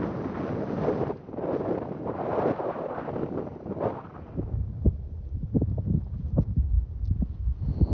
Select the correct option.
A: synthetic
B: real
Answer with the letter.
B